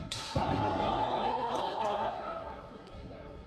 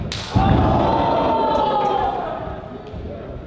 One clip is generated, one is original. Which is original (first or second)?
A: second